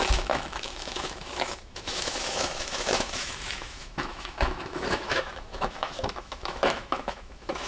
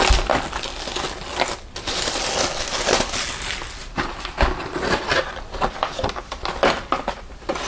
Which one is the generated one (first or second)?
first